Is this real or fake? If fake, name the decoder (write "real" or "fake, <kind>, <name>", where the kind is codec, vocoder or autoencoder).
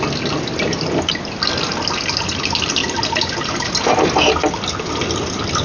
real